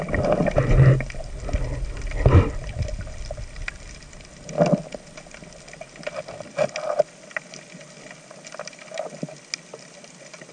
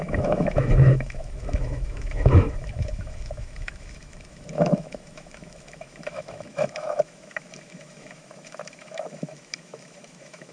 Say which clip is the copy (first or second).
second